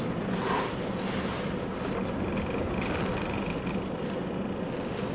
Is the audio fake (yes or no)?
no